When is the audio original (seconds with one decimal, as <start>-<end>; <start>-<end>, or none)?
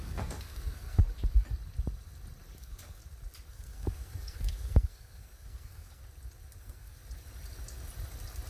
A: 1.0-2.6; 3.0-3.5; 6.0-6.6; 7.0-8.5